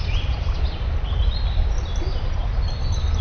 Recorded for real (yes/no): yes